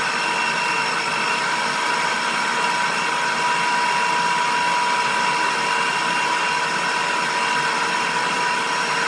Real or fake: real